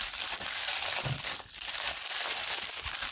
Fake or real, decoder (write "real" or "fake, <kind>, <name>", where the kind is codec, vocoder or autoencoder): real